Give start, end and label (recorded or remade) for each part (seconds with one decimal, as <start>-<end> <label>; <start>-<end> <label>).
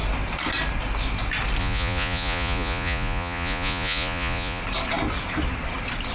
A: 0.0-1.6 recorded; 1.6-4.6 remade; 4.6-6.1 recorded